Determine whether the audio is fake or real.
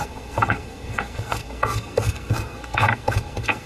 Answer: fake